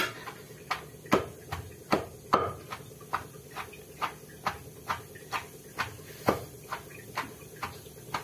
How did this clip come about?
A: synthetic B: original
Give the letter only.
B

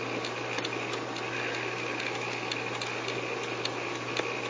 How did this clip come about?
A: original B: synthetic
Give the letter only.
A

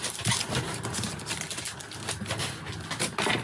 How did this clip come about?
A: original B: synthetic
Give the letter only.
A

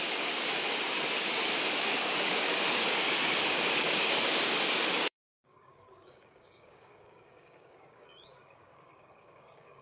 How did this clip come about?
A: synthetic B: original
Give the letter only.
A